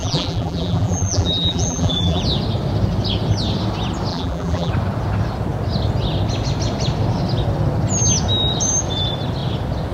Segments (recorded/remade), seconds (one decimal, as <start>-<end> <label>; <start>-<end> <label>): 0.0-2.2 remade; 2.2-4.1 recorded; 4.1-4.7 remade; 4.7-9.9 recorded